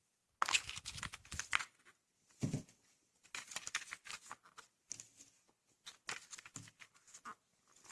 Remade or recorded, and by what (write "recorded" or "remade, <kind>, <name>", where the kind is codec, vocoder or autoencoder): recorded